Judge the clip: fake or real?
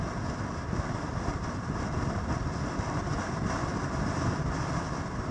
real